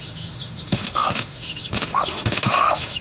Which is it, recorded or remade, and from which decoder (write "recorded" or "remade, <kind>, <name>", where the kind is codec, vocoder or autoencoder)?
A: remade, autoencoder, DAC-VAE